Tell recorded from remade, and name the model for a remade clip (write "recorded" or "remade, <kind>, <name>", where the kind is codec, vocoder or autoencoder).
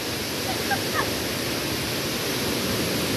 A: recorded